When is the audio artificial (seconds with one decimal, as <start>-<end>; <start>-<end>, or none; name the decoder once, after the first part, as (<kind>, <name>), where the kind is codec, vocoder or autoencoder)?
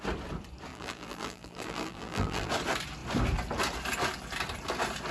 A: 0.7-2.5 (vocoder, BigVGAN v2)